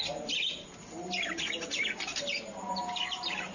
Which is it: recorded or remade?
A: recorded